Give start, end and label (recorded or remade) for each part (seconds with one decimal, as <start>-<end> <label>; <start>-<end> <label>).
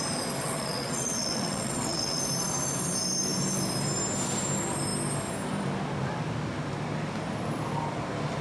0.0-0.4 recorded; 0.4-2.2 remade; 2.2-8.4 recorded